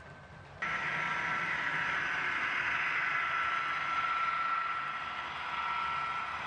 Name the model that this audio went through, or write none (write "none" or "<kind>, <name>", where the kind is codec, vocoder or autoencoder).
none